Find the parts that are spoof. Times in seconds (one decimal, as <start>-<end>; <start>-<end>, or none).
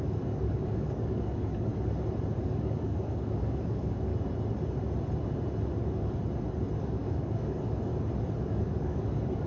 0.0-1.7; 2.4-4.1; 5.8-6.2; 6.8-7.9; 8.4-9.5